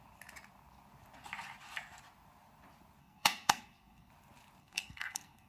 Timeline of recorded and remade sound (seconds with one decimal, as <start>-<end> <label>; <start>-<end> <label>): 0.0-3.0 recorded; 3.0-4.1 remade; 4.1-4.6 recorded; 4.6-5.5 remade